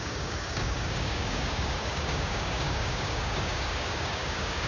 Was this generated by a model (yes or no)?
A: yes